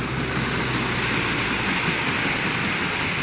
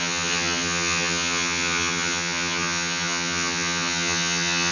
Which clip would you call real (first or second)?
first